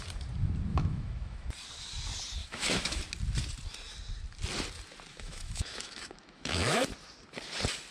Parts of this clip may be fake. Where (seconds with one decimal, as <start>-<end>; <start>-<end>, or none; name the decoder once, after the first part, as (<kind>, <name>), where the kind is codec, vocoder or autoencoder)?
0.7-1.5 (autoencoder, DAC-VAE); 2.4-3.0; 5.1-6.9